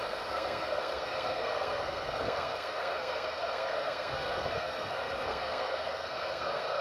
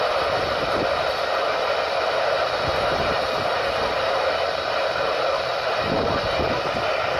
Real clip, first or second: second